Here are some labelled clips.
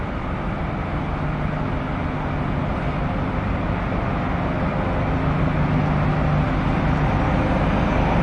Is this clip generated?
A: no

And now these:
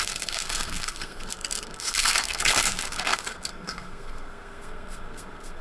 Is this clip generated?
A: yes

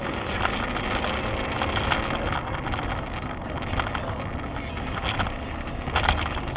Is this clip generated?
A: no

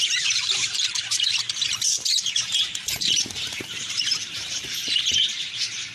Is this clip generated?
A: yes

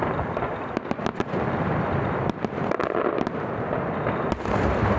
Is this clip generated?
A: no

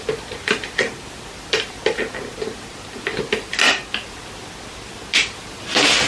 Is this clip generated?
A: no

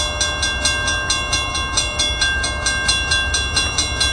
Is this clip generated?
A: no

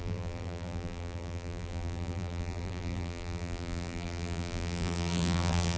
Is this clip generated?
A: yes